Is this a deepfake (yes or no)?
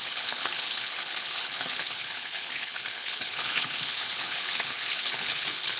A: yes